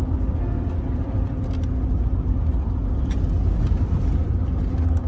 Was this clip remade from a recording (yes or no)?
no